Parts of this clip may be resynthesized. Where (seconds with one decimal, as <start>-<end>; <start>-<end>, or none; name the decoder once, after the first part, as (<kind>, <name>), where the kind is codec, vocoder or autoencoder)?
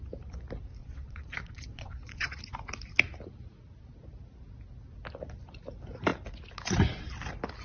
0.8-2.4 (vocoder, Vocos)